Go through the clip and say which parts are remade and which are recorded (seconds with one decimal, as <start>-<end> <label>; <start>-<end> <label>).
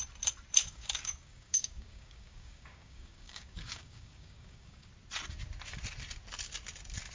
0.0-0.6 recorded; 0.6-4.9 remade; 4.9-7.1 recorded